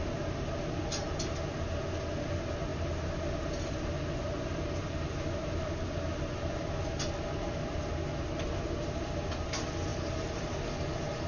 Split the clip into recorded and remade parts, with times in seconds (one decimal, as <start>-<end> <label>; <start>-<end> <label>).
0.0-11.3 recorded